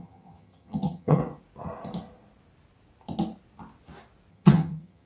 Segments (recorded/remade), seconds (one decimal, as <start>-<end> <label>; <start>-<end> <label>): 0.0-1.2 remade; 1.2-4.3 recorded; 4.3-5.1 remade